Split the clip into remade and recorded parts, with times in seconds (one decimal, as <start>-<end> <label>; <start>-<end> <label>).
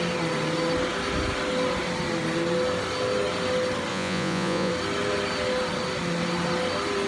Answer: 0.0-3.9 recorded; 3.9-4.7 remade; 4.7-7.1 recorded